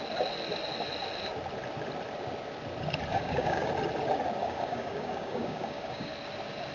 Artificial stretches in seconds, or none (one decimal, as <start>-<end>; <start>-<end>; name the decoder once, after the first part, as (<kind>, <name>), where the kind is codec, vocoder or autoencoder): 3.1-3.7 (codec, DAC); 4.4-6.1